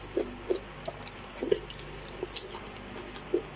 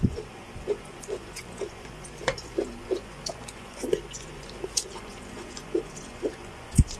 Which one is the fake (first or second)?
second